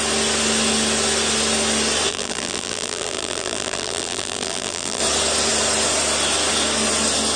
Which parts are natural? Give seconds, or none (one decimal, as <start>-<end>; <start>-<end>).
0.0-2.1; 5.0-7.4